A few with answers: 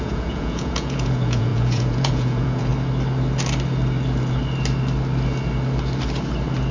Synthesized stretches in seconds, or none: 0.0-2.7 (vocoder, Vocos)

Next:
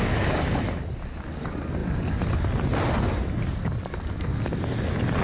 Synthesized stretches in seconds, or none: none

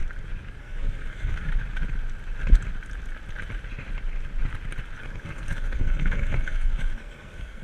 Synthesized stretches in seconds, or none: 0.6-1.5 (codec, SNAC); 5.0-7.6

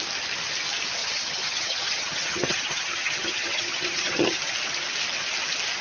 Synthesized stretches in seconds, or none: 1.0-4.4 (vocoder, HiFi-GAN)

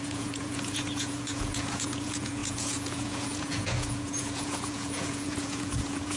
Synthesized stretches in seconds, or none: 0.0-6.2 (vocoder, Vocos)

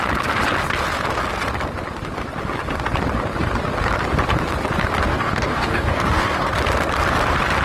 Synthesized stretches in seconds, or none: 5.1-6.5 (codec, DAC)